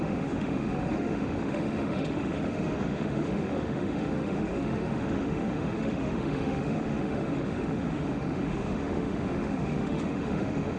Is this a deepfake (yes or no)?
yes